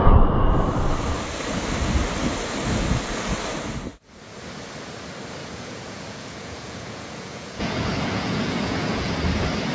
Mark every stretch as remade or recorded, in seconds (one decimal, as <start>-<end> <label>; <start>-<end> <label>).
0.0-5.4 recorded; 5.4-9.1 remade; 9.1-9.7 recorded